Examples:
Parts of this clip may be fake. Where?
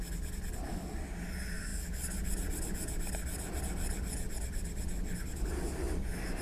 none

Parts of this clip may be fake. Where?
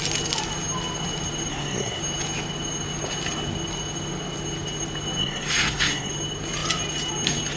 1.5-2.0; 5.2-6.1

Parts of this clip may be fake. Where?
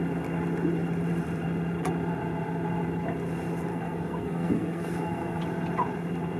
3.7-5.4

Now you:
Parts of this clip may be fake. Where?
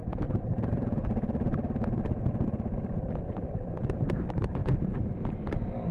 0.0-5.9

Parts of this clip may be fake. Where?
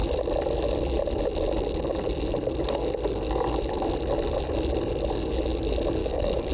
6.0-6.5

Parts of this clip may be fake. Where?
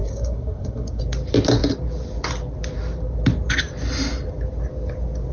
0.0-1.0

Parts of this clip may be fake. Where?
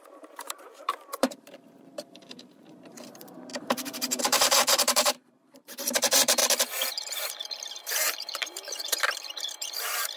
0.0-6.4; 6.9-10.2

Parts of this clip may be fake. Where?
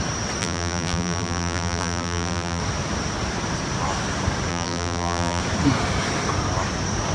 0.4-2.6; 4.5-5.4